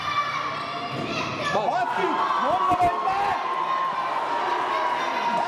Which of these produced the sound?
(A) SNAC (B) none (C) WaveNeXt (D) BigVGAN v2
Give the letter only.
B